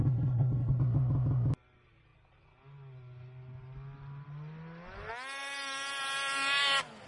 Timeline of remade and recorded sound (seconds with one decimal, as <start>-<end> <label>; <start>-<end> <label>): 0.0-0.8 remade; 0.8-7.1 recorded